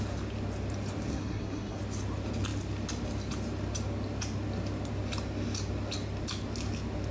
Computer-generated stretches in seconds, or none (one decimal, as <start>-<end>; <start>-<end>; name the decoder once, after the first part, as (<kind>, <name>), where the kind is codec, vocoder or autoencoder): 1.1-1.8 (codec, SNAC)